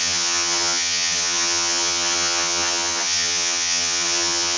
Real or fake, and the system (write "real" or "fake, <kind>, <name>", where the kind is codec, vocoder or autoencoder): fake, vocoder, HiFi-GAN